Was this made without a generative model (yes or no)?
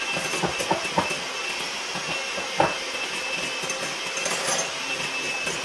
yes